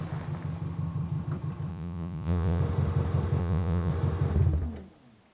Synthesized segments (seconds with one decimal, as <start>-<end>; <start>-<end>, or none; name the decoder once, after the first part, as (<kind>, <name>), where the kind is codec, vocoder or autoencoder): 1.7-2.6 (vocoder, Vocos); 3.4-3.9